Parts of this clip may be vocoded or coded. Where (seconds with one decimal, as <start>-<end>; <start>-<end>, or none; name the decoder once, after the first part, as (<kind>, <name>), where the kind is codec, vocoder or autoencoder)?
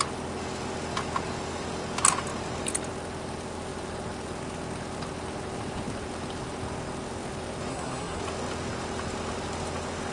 7.7-8.2 (codec, SNAC)